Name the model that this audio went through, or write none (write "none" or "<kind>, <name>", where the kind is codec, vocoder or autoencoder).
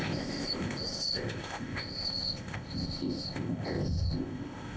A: codec, ZipCodec